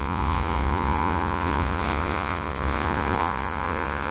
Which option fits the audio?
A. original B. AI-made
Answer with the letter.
B